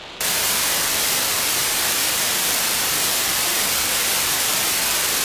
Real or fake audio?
fake